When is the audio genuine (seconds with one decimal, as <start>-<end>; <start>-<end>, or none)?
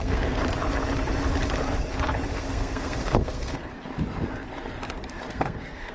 0.4-2.3; 3.7-5.3